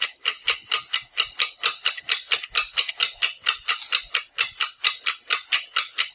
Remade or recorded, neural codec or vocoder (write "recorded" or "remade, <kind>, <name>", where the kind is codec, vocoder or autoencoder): recorded